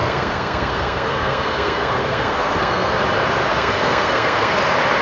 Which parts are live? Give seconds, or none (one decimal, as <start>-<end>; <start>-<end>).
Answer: 2.9-3.5; 4.6-5.0